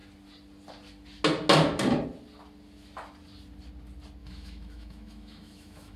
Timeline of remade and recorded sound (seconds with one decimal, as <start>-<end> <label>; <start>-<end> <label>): 0.0-4.2 recorded; 4.2-6.0 remade